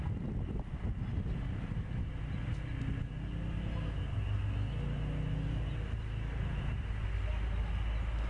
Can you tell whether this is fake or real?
real